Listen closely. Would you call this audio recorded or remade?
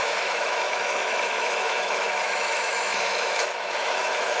remade